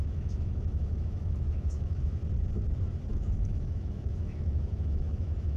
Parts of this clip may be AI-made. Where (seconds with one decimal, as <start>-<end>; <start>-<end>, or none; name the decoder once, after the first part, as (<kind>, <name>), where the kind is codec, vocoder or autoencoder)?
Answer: 0.0-2.2 (autoencoder, DAC-VAE); 3.1-5.6